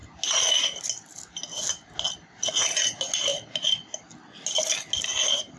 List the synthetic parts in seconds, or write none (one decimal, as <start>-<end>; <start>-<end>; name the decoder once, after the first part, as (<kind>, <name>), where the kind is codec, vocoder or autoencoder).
none